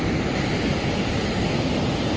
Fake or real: real